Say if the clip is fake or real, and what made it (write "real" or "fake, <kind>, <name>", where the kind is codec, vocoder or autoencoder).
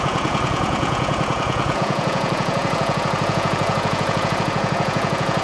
fake, vocoder, Vocos